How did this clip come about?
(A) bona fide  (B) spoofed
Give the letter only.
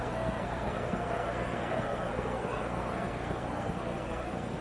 B